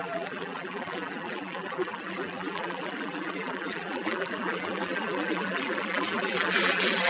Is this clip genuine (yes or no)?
no